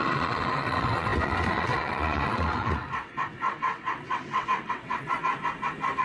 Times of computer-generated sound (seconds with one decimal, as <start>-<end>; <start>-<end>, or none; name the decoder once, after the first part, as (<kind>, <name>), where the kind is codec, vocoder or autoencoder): 0.0-5.3 (vocoder, WaveNeXt)